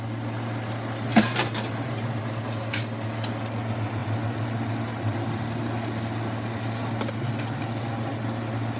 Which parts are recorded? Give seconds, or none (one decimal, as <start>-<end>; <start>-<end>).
0.0-1.1; 2.2-8.8